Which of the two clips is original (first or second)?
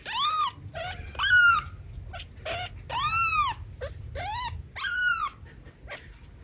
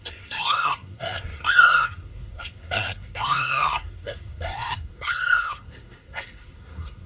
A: first